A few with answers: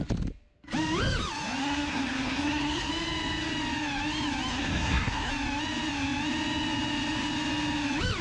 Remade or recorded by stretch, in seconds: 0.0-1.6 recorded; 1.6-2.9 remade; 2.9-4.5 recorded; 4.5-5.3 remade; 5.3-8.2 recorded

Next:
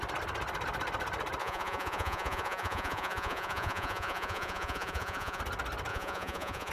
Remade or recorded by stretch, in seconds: 0.0-1.4 recorded; 1.4-5.4 remade; 5.4-5.9 recorded; 5.9-6.7 remade

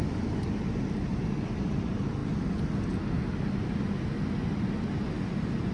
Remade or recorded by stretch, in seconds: 0.0-5.7 recorded

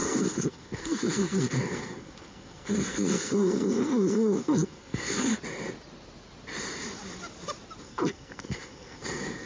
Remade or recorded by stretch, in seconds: 0.0-5.3 remade; 5.3-7.8 recorded; 7.8-9.5 remade

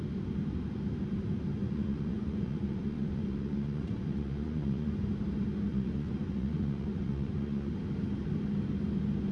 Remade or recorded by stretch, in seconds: 0.0-1.6 recorded; 1.6-4.9 remade; 4.9-5.7 recorded; 5.7-7.7 remade; 7.7-9.3 recorded

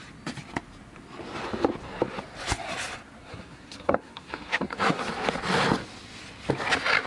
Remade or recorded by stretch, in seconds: 0.0-3.2 recorded; 3.2-5.0 remade; 5.0-7.1 recorded

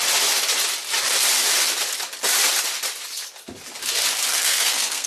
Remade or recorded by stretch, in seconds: 0.0-4.3 recorded; 4.3-5.1 remade